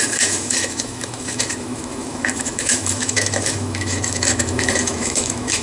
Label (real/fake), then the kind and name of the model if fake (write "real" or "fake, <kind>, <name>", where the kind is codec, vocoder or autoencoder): fake, autoencoder, DAC-VAE